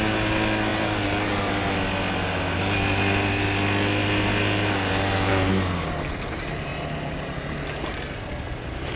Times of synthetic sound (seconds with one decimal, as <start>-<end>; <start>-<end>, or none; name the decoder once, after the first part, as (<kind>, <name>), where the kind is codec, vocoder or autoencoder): none